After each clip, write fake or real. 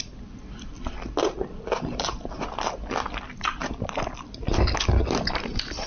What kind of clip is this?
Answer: real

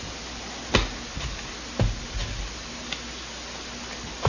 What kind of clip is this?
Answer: real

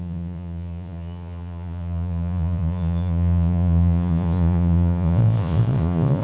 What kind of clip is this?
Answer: fake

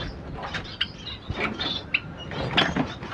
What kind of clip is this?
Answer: real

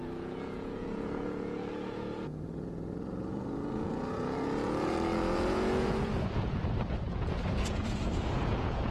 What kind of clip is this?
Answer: fake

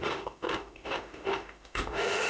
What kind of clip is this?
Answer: fake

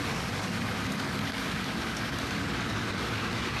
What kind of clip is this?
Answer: fake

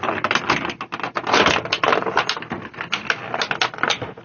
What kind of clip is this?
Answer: real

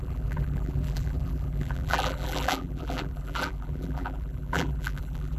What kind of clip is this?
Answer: fake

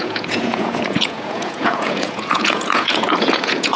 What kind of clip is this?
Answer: fake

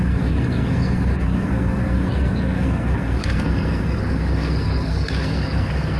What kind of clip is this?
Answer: fake